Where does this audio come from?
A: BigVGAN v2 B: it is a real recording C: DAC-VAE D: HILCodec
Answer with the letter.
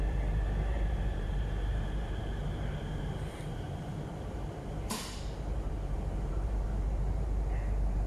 A